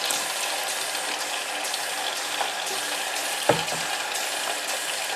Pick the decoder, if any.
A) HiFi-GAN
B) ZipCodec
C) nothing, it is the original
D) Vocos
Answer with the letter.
C